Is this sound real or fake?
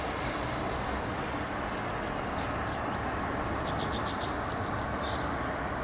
real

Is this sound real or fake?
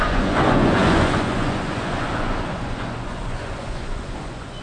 fake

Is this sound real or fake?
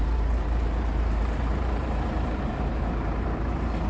fake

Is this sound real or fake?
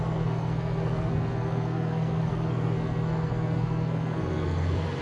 fake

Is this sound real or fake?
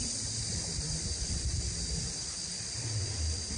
fake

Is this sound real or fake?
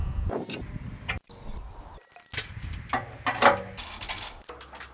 real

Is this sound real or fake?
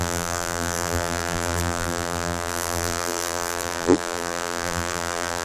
fake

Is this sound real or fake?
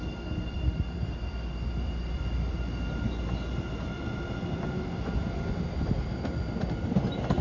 real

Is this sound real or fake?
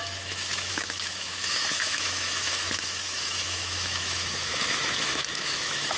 fake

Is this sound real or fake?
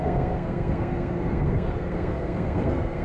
fake